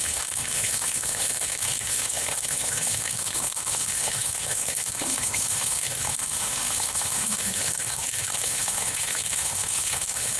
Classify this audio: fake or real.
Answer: fake